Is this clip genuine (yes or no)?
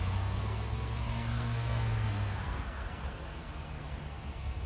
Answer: no